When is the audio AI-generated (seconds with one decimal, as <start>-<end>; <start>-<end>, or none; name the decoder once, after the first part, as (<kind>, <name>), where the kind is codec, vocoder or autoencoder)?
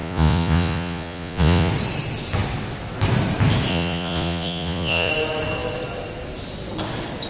0.0-1.7 (vocoder, Vocos); 3.7-5.1